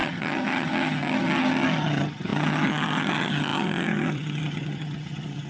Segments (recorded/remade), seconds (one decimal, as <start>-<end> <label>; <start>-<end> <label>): 0.0-5.5 remade